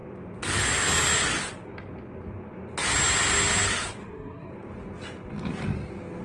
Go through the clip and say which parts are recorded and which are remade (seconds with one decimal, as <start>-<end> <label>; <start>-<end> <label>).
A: 0.0-4.0 recorded; 4.0-4.5 remade; 4.5-6.2 recorded

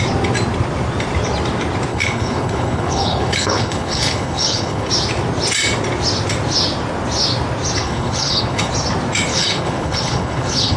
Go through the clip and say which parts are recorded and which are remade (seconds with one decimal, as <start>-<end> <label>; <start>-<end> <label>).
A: 0.0-1.9 recorded; 1.9-4.9 remade; 4.9-7.8 recorded; 7.8-8.7 remade; 8.7-9.3 recorded; 9.3-10.8 remade